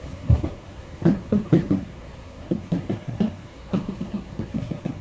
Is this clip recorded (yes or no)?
no